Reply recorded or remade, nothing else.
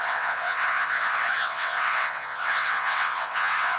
remade